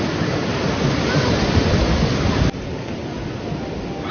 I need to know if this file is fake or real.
real